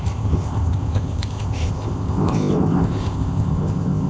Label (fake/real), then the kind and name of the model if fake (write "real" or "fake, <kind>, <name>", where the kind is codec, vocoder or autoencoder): fake, codec, ZipCodec